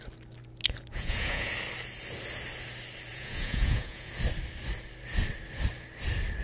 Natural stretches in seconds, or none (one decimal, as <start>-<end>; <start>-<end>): 0.0-0.9; 1.5-3.1; 4.1-6.4